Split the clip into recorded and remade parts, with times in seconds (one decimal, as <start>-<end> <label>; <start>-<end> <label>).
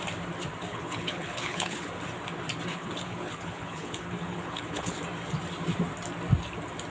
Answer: 0.0-0.7 recorded; 0.7-1.9 remade; 1.9-2.7 recorded; 2.7-5.0 remade; 5.0-6.9 recorded